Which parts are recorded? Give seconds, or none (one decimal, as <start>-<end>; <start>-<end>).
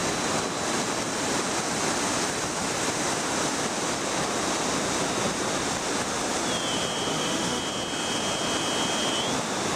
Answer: 0.0-7.1; 7.6-9.8